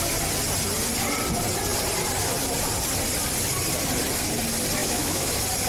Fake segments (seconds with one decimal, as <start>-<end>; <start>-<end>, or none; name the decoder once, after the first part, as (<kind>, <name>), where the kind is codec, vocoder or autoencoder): 4.8-5.3 (autoencoder, DAC-VAE)